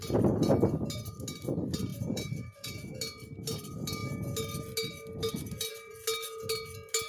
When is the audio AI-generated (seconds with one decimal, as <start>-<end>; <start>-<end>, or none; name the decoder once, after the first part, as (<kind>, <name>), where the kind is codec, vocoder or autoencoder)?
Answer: 1.9-3.0 (vocoder, Vocos)